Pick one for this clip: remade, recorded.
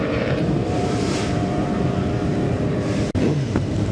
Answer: remade